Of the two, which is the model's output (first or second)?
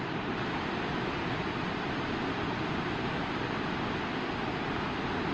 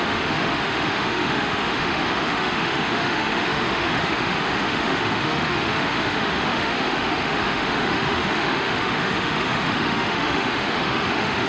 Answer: second